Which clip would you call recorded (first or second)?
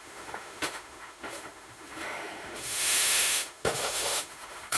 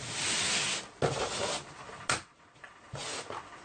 second